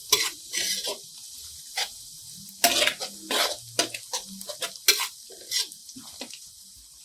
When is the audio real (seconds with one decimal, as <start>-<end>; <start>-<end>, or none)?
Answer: 2.5-5.8; 6.5-7.0